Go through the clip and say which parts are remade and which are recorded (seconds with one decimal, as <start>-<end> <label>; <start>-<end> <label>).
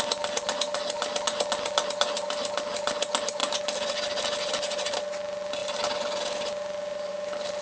0.0-7.6 recorded